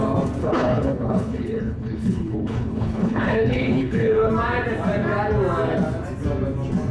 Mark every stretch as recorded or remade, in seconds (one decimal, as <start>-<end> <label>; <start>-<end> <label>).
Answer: 0.0-0.4 recorded; 0.4-4.3 remade; 4.3-6.9 recorded